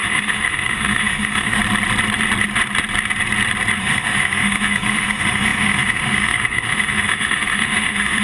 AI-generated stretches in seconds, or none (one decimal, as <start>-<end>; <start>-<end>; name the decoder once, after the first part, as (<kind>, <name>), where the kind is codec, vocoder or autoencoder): 0.0-1.6 (autoencoder, DAC-VAE); 3.8-8.2